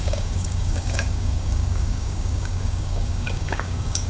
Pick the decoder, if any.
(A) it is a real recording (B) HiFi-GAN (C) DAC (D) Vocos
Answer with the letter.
C